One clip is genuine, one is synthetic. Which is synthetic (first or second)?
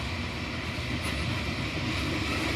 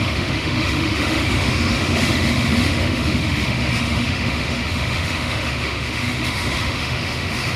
second